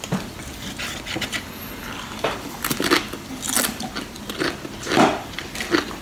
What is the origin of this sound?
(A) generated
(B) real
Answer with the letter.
B